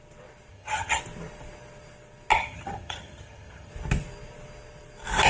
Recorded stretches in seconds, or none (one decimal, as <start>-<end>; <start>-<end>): 0.0-0.5; 1.0-2.3; 3.7-5.3